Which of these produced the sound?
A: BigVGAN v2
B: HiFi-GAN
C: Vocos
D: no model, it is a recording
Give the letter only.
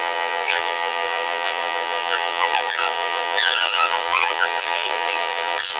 A